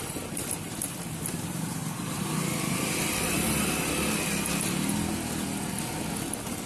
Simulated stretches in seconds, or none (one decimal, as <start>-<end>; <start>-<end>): none